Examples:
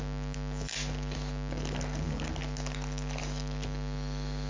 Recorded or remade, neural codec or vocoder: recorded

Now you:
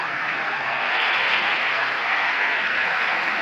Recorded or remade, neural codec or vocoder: remade, codec, SNAC